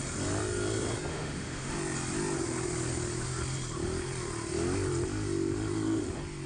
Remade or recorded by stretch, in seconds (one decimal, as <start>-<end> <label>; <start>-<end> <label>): 0.0-1.1 recorded; 1.1-1.7 remade; 1.7-6.5 recorded